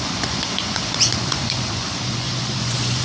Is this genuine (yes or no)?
no